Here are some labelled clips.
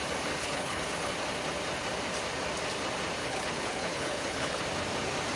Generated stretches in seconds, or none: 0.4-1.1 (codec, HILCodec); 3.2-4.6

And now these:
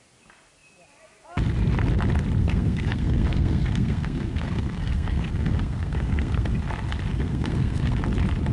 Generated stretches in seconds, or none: 2.4-6.6 (codec, SNAC); 7.1-8.0

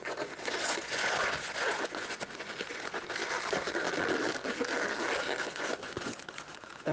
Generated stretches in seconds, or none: 0.0-3.2 (vocoder, Vocos); 5.4-6.9

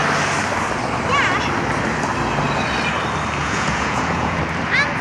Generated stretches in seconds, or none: 3.4-4.4 (vocoder, Vocos)

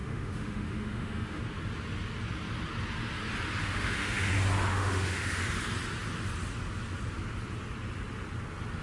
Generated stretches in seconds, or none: 0.0-1.4 (autoencoder, DAC-VAE); 3.6-4.3; 4.7-5.4

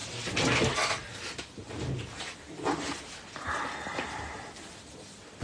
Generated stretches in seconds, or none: none

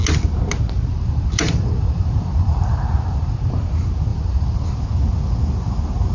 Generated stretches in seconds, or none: 0.9-3.6 (vocoder, BigVGAN v2); 4.1-4.8